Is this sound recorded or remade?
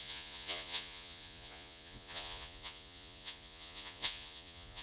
remade